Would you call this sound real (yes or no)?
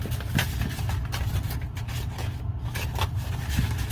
yes